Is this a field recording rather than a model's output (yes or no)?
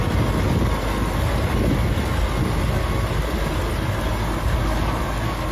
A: yes